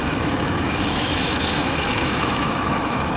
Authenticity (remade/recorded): remade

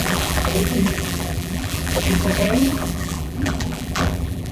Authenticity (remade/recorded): remade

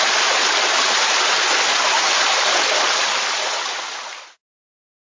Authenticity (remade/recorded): recorded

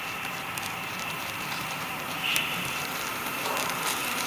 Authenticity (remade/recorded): remade